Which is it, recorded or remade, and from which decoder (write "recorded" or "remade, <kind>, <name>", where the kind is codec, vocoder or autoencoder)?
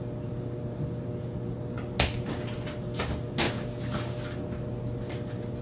recorded